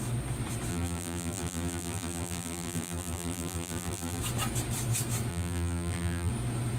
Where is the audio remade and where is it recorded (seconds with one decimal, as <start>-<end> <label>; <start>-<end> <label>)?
0.0-0.7 recorded; 0.7-4.2 remade; 4.2-5.3 recorded; 5.3-6.3 remade; 6.3-6.8 recorded